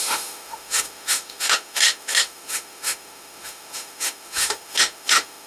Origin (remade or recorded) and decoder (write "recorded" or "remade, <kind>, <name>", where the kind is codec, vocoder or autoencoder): remade, autoencoder, DAC-VAE